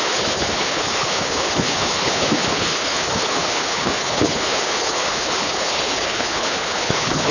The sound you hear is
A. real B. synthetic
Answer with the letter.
B